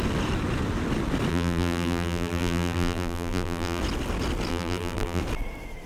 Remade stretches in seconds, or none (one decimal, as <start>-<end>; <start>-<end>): 1.3-3.8; 4.5-5.2